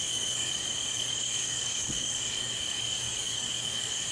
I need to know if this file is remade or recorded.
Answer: remade